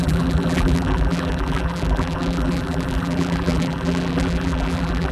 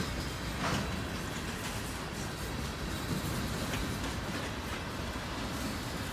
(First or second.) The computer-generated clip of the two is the first